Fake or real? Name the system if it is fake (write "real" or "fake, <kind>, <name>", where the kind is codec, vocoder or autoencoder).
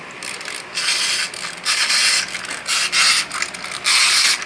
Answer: real